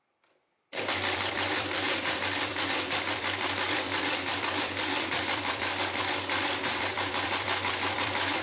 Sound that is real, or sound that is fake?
fake